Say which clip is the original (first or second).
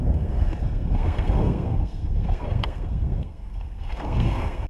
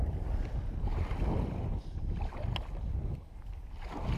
second